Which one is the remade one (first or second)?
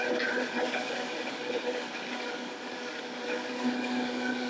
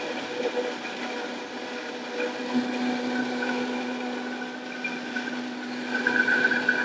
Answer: first